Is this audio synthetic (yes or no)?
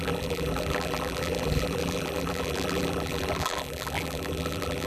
yes